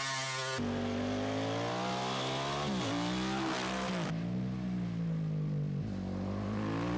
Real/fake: real